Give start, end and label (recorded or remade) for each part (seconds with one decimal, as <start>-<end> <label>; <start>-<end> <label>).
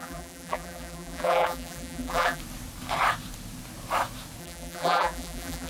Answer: 0.0-2.4 remade; 2.4-4.4 recorded; 4.4-5.7 remade